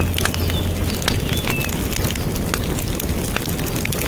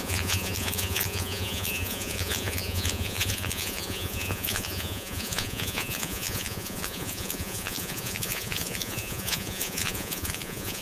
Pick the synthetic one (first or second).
second